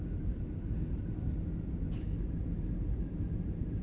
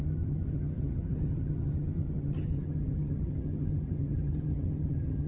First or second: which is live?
first